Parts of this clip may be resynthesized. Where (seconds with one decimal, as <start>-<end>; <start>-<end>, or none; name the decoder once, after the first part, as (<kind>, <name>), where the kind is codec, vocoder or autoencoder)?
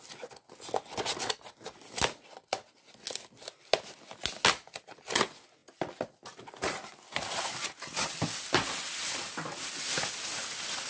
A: none